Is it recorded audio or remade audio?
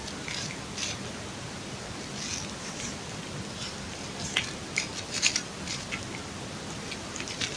recorded